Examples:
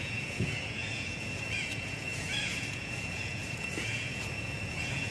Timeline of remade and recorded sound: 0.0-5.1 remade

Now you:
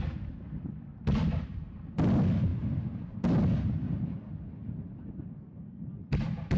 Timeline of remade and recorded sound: 0.0-6.6 recorded

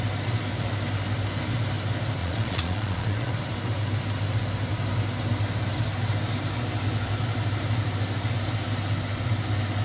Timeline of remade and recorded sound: 0.0-2.2 recorded; 2.2-3.3 remade; 3.3-9.8 recorded

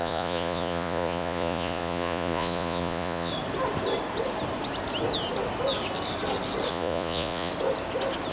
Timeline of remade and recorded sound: 0.0-3.3 remade; 3.3-6.7 recorded; 6.7-7.5 remade; 7.5-8.3 recorded

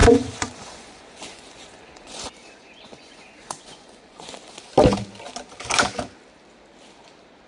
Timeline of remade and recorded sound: 0.0-4.5 remade; 4.5-7.5 recorded

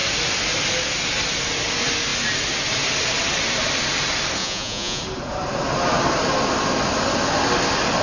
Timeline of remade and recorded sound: 0.0-4.4 recorded; 4.4-5.0 remade; 5.0-8.0 recorded